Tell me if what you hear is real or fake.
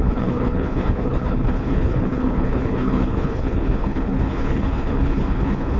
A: fake